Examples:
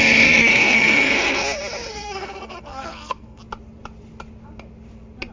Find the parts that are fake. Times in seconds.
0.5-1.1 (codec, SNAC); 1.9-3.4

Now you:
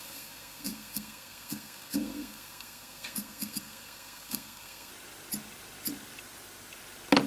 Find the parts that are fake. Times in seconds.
0.0-4.9 (codec, SNAC)